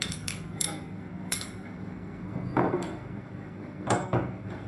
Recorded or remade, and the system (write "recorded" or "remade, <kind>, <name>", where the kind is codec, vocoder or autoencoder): remade, codec, SNAC